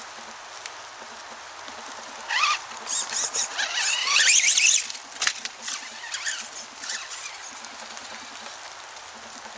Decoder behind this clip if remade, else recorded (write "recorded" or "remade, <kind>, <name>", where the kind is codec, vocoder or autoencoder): recorded